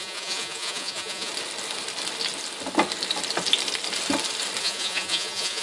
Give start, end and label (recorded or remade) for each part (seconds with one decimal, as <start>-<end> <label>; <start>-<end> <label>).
0.0-1.3 remade; 1.3-4.6 recorded; 4.6-5.6 remade